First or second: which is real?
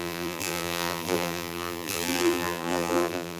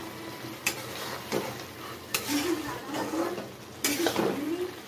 second